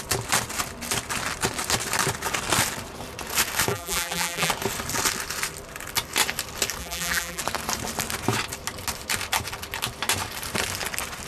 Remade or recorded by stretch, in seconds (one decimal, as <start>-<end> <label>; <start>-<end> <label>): 0.0-3.7 recorded; 3.7-4.5 remade; 4.5-6.8 recorded; 6.8-7.4 remade; 7.4-11.3 recorded